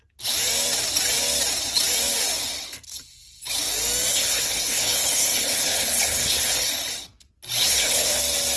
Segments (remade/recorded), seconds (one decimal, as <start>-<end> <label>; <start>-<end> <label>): 0.0-4.1 recorded; 4.1-6.7 remade; 6.7-7.6 recorded; 7.6-8.2 remade; 8.2-8.6 recorded